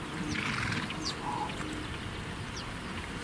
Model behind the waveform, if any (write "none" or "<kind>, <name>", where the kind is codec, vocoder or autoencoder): none